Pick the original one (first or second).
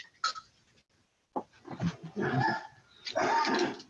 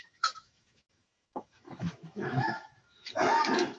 first